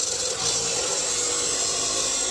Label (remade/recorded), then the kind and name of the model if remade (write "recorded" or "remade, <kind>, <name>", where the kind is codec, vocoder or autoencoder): recorded